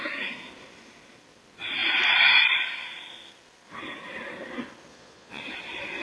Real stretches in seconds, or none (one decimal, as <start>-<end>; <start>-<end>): 0.0-4.9; 5.4-6.0